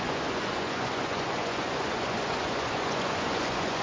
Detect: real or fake fake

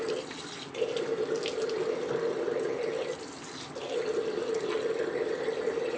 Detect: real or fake real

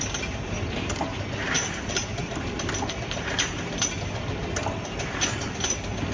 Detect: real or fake real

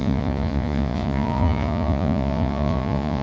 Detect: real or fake fake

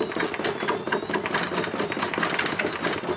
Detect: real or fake real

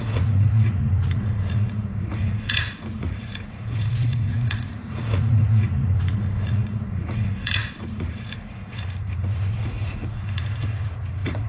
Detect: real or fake fake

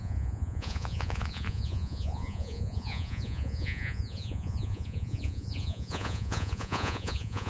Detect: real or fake fake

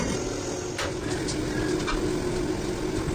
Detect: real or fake real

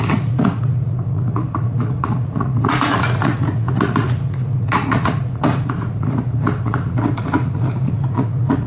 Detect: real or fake fake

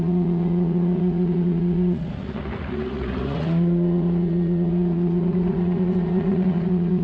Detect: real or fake fake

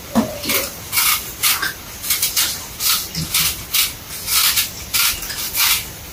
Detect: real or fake real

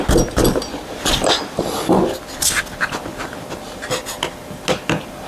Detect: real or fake real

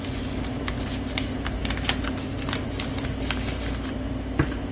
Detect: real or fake real